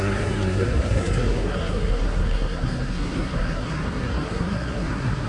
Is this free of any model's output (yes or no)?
no